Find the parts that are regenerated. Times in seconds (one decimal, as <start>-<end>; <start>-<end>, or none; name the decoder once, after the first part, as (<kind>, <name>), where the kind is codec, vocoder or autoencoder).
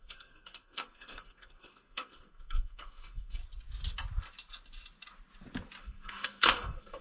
0.0-3.4 (codec, SNAC); 5.8-7.0